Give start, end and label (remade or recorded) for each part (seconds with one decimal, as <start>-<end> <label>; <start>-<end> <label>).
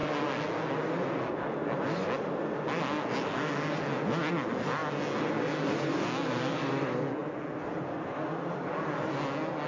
0.0-9.7 recorded